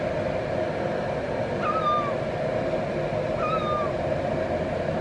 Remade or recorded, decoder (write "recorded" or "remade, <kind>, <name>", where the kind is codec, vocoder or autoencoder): recorded